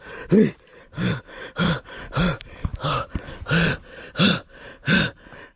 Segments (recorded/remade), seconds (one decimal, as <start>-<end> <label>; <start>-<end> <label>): 0.0-5.6 recorded